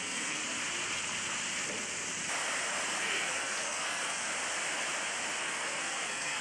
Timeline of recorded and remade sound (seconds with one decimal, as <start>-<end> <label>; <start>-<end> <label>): 0.0-0.4 remade; 0.4-3.0 recorded; 3.0-4.3 remade; 4.3-5.4 recorded; 5.4-6.4 remade